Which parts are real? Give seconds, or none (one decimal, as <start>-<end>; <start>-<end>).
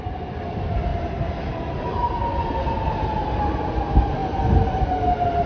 0.0-0.9; 3.7-4.2; 4.9-5.5